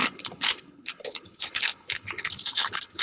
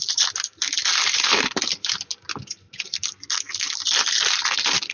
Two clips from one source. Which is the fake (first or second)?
first